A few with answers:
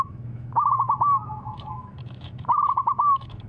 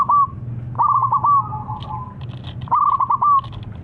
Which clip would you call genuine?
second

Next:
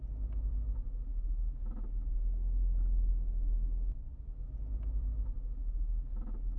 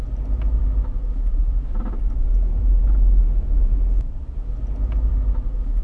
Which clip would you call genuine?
first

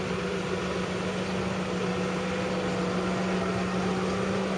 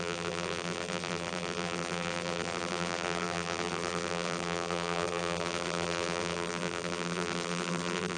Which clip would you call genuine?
first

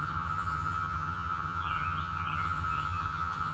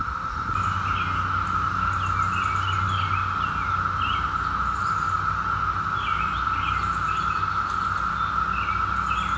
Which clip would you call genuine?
second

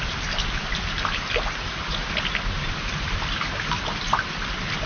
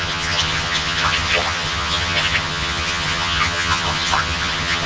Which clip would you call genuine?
first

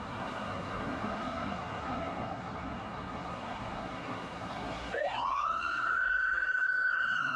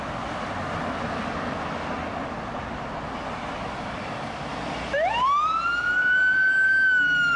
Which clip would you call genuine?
second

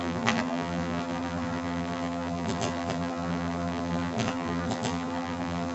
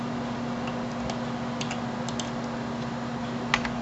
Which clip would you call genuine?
second